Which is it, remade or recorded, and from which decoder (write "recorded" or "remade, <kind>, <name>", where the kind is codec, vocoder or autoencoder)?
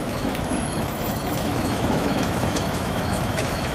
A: remade, autoencoder, DAC-VAE